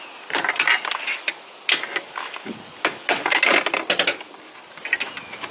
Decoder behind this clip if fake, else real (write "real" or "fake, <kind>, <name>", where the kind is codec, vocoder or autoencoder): real